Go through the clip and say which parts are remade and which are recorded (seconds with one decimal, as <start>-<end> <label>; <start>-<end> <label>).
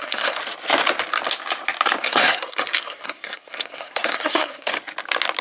0.0-0.4 remade; 0.4-2.0 recorded; 2.0-4.7 remade; 4.7-5.4 recorded